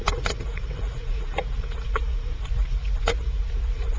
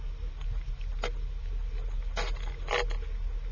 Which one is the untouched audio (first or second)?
second